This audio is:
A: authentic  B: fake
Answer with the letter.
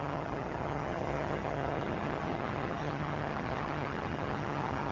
B